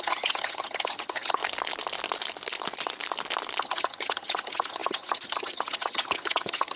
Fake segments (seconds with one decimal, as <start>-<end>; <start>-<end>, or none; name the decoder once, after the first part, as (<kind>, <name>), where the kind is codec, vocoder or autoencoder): 0.0-1.4 (vocoder, HiFi-GAN); 3.6-6.8